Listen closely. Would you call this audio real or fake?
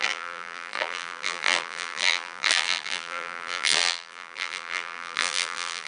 fake